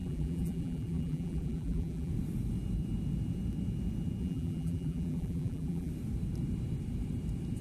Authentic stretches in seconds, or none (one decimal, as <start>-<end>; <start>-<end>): 2.1-4.2; 5.9-7.6